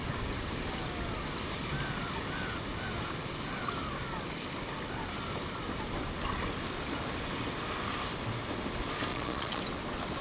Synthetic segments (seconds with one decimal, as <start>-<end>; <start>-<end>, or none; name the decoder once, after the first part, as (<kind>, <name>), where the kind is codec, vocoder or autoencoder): 9.1-9.6 (vocoder, Vocos)